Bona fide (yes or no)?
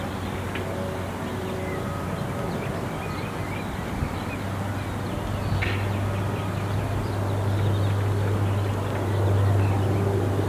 yes